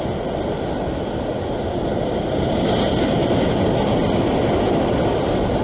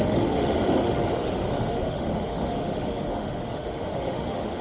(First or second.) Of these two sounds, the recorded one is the first